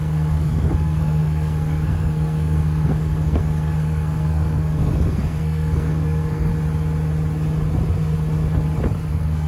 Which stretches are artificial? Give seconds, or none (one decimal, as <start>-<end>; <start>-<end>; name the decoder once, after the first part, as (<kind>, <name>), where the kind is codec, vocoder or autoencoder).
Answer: 0.0-6.5 (codec, SNAC); 9.1-9.5